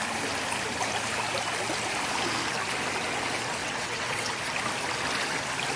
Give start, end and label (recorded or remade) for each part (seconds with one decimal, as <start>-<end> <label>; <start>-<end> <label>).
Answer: 0.0-3.6 recorded; 3.6-4.3 remade; 4.3-5.8 recorded